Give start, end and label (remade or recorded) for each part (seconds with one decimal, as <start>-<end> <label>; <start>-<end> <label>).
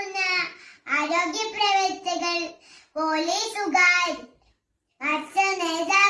0.0-6.1 recorded